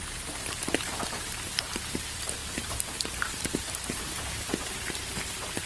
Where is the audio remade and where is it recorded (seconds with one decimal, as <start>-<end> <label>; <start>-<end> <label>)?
0.0-5.7 remade